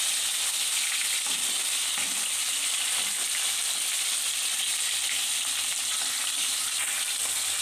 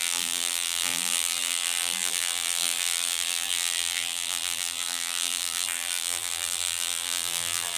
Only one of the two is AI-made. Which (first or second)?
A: second